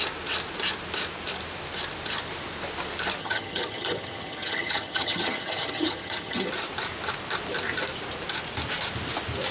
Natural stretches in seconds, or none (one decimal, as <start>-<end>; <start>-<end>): 0.0-3.2; 6.5-9.5